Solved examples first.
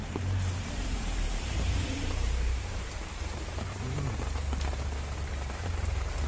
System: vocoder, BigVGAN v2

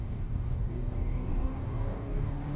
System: codec, DAC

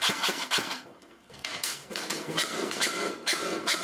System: codec, SNAC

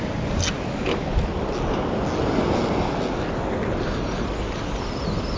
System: none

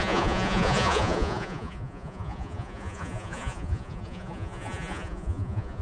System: vocoder, Vocos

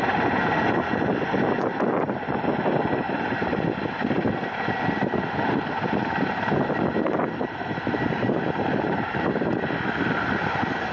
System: none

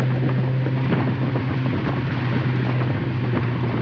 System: none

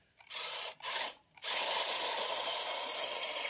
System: vocoder, BigVGAN v2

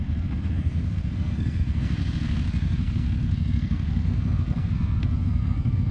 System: codec, SNAC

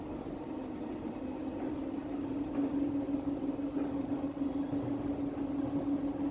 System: none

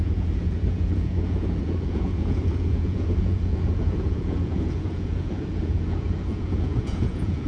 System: vocoder, Vocos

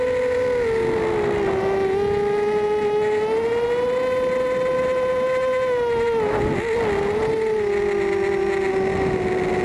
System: none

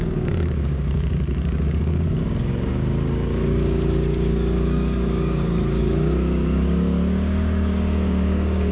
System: codec, DAC